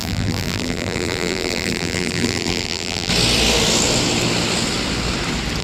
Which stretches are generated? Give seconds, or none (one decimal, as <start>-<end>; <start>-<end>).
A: 0.0-3.1